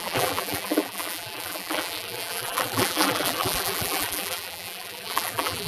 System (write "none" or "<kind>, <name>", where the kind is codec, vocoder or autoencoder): vocoder, BigVGAN v2